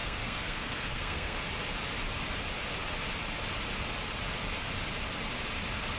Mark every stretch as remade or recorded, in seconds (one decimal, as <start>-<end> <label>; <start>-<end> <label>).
0.0-1.4 remade; 1.4-6.0 recorded